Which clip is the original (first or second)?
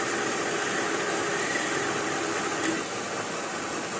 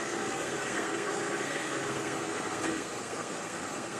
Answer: first